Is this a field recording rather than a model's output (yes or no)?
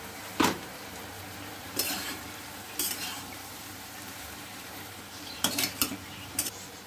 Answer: no